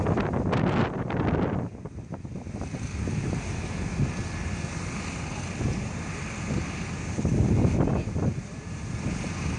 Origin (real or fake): real